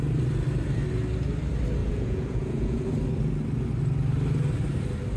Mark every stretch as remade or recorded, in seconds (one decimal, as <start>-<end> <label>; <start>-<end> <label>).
0.0-1.8 recorded; 1.8-2.9 remade; 2.9-5.2 recorded